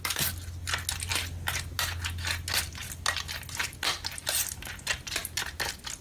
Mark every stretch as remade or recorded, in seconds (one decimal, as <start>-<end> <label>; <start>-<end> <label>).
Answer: 0.0-6.0 recorded